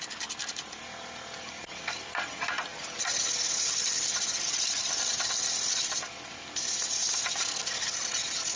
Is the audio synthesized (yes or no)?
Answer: no